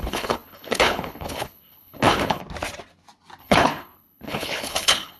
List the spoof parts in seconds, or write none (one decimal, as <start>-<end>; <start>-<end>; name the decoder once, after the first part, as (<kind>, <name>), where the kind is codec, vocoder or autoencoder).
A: 0.0-2.4 (codec, HILCodec); 3.4-5.2